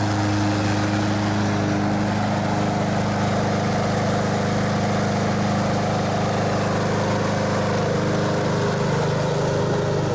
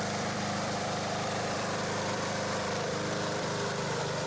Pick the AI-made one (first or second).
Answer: second